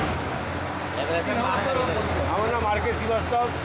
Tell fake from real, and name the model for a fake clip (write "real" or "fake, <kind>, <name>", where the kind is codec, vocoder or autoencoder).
real